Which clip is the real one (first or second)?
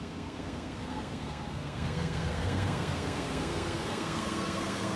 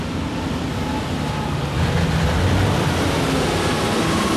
second